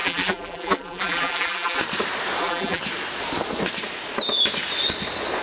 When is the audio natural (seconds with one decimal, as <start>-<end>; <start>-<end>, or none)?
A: 1.8-2.4; 2.8-5.4